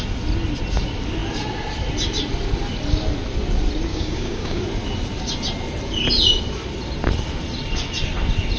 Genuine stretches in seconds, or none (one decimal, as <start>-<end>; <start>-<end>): 0.0-3.9; 4.6-8.6